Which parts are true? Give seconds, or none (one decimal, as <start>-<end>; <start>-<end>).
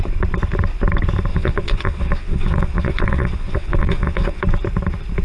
0.0-1.3; 4.4-5.2